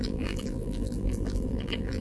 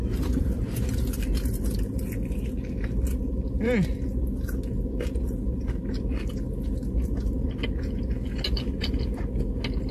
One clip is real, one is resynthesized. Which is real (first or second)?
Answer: second